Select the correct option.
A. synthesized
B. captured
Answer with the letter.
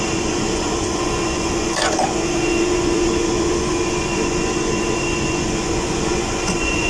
A